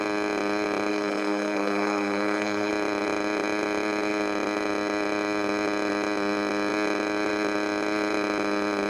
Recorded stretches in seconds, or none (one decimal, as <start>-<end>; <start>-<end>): 0.0-0.9; 2.7-8.9